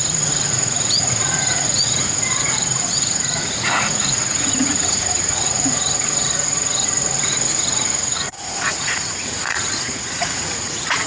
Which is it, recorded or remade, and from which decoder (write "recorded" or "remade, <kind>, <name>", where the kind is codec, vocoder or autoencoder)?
remade, vocoder, Vocos